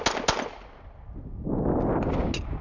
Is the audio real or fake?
real